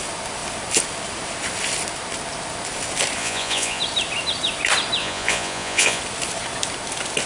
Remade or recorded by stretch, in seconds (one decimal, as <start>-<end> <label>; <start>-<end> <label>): 0.0-3.2 recorded; 3.2-3.8 remade; 3.8-5.0 recorded; 5.0-6.0 remade; 6.0-7.3 recorded